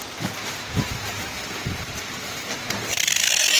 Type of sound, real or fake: fake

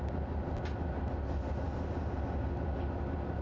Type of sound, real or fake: real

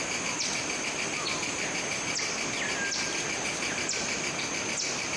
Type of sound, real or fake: real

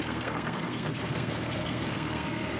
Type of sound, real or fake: fake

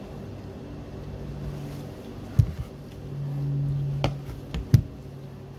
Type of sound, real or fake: real